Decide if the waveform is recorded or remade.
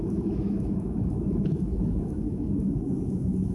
remade